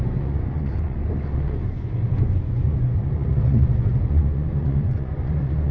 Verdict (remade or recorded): remade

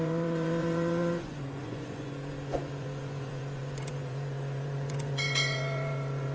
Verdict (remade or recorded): remade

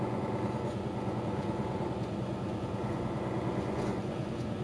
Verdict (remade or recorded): remade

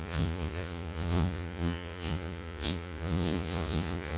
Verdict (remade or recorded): remade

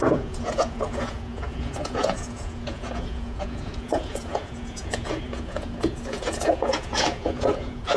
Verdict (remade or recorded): remade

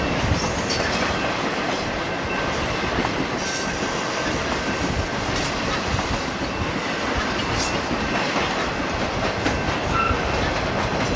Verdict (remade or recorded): recorded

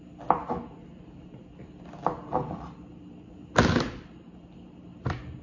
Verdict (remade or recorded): recorded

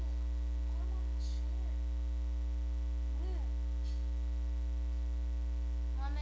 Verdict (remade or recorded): recorded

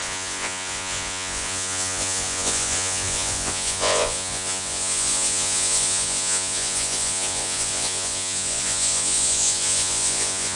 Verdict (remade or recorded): remade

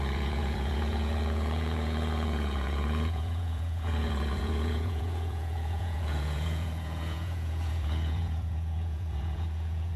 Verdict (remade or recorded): remade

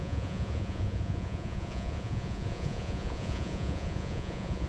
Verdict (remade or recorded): remade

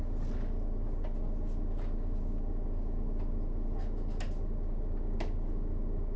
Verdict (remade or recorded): recorded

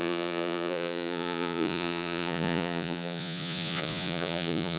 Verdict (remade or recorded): remade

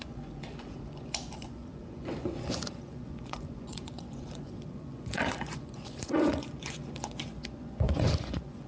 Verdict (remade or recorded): remade